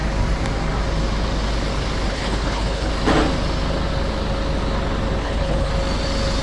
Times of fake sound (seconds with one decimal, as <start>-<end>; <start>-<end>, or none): 2.1-2.9; 5.2-5.7